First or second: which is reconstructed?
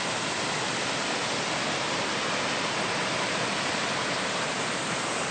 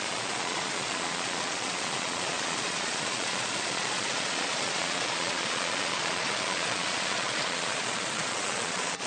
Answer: second